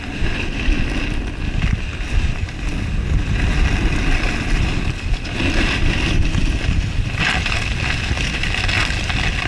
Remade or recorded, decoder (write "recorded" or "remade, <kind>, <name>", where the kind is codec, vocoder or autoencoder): recorded